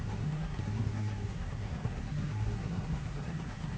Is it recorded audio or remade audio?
remade